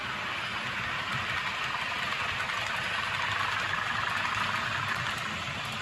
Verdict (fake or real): real